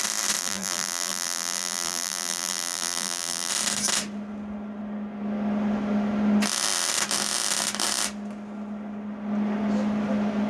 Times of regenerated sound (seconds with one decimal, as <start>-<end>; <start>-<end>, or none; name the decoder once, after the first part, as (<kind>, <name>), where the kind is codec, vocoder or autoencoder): 0.4-3.5 (vocoder, BigVGAN v2)